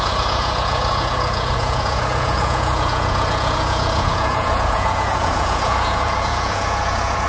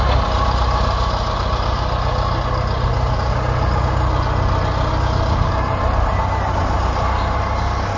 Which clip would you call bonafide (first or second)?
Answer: second